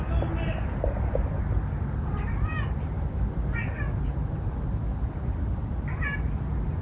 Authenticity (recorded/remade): recorded